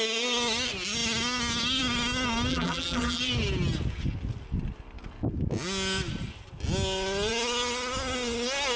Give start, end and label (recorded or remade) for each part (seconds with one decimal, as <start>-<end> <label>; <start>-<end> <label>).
0.0-2.5 recorded; 2.5-3.2 remade; 3.2-8.8 recorded